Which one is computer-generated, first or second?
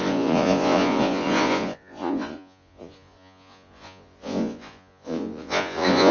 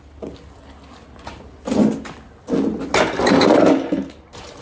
first